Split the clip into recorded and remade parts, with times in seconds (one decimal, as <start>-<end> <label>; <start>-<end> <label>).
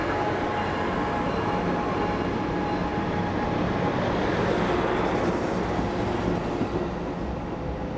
0.0-8.0 recorded